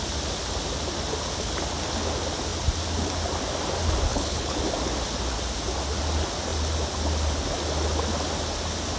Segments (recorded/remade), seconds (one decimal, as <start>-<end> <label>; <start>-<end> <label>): 0.0-4.1 recorded; 4.1-4.6 remade; 4.6-9.0 recorded